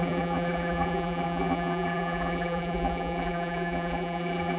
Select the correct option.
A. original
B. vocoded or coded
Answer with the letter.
B